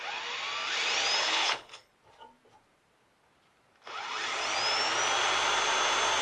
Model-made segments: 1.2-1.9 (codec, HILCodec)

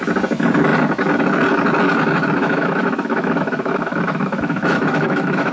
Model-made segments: 2.4-5.5 (autoencoder, DAC-VAE)